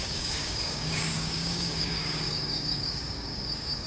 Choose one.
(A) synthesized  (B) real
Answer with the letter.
A